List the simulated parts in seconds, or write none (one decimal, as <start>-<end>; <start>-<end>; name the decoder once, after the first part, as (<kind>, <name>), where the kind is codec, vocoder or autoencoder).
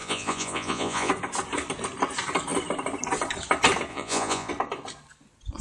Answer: 0.0-1.1 (vocoder, Vocos); 3.9-4.5